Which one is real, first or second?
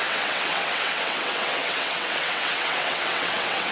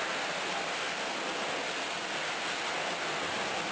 second